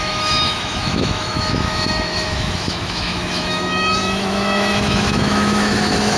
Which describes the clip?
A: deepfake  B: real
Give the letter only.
A